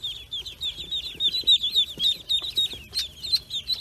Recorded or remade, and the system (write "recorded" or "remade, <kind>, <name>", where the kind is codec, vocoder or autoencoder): recorded